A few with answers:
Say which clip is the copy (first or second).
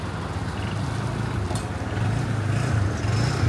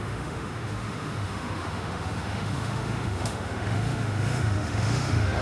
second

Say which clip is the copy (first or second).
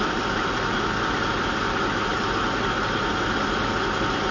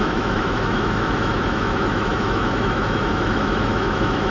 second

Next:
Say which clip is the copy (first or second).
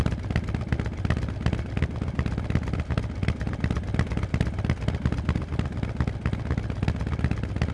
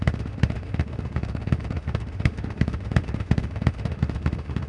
second